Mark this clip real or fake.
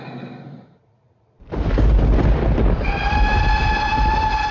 real